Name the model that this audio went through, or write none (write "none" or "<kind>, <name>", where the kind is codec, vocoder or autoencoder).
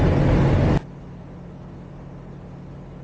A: none